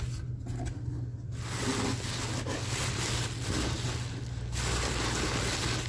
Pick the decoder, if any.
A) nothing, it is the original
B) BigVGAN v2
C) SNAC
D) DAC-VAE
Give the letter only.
A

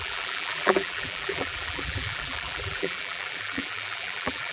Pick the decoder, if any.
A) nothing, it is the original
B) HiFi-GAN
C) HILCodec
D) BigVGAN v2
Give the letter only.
D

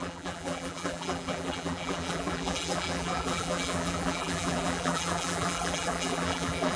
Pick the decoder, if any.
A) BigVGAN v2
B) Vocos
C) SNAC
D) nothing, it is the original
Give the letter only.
A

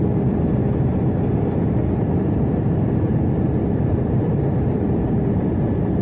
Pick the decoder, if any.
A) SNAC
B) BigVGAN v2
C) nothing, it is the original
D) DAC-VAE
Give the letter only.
B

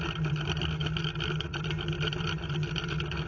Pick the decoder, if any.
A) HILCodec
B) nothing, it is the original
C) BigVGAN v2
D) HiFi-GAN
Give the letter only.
B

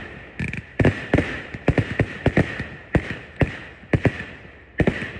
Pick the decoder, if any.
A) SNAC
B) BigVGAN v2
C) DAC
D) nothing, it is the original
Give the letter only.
D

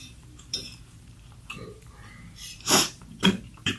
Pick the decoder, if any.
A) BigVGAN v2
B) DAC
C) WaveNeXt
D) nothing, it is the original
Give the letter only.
A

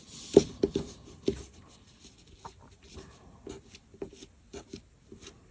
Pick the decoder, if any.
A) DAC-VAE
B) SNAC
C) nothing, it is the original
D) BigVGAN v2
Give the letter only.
C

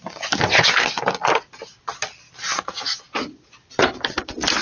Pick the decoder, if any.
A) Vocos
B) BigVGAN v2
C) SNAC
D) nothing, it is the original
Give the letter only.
D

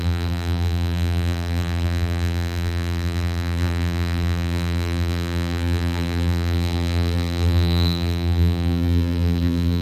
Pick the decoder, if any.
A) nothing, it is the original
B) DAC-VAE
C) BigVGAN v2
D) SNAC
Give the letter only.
C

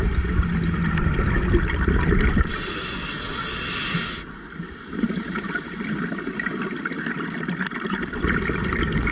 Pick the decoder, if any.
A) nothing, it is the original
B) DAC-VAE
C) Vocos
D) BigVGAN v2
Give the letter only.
A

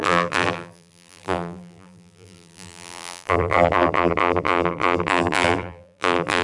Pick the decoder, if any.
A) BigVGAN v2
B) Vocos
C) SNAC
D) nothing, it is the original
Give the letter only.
A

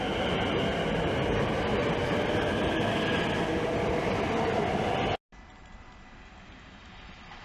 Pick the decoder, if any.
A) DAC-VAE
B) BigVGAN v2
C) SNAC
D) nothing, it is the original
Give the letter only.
D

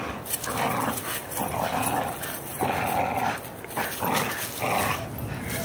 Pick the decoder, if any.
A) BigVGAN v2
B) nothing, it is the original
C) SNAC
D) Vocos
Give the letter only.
B